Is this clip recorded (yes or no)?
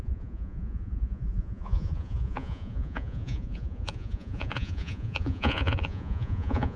no